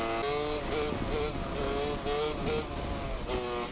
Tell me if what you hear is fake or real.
real